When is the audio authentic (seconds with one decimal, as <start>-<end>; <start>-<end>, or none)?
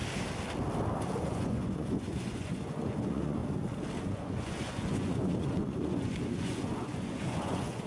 0.0-1.2; 3.4-4.0